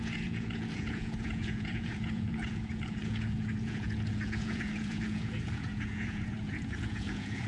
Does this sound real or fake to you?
fake